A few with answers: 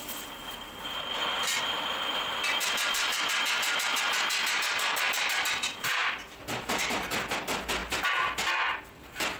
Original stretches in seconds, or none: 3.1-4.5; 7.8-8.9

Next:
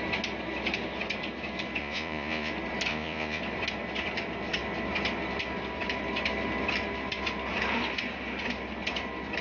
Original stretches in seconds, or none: 0.0-1.8; 2.5-2.9; 3.4-9.4

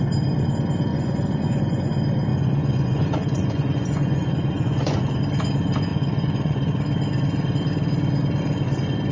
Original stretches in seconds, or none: 0.0-0.9; 1.9-2.3; 5.2-5.9; 6.7-9.1